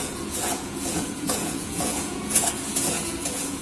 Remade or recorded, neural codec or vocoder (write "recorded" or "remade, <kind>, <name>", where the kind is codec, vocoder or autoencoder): remade, vocoder, Vocos